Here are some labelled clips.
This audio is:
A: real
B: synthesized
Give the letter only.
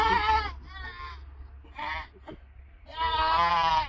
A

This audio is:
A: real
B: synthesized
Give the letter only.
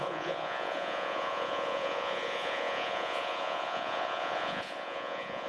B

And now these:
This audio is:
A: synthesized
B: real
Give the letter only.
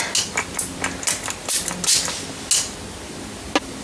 B